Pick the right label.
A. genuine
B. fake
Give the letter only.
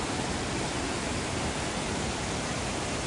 A